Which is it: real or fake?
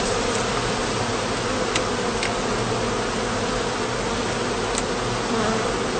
real